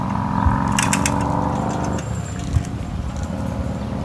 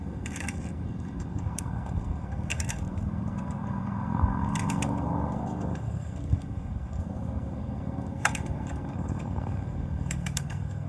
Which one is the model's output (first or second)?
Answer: second